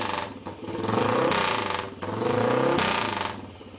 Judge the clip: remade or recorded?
recorded